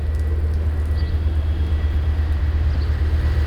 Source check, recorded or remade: recorded